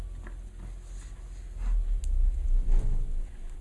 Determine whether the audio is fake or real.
real